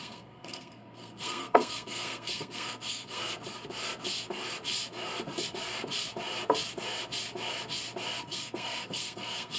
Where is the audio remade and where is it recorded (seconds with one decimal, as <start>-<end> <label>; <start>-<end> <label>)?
0.0-3.2 remade; 3.2-8.2 recorded; 8.2-9.6 remade